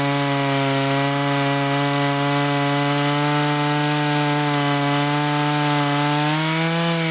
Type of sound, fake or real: real